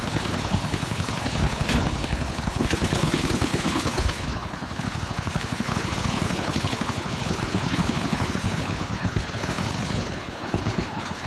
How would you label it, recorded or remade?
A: remade